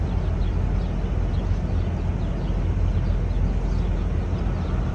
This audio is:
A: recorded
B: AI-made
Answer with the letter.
A